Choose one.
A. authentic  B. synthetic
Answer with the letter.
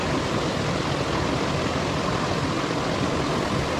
A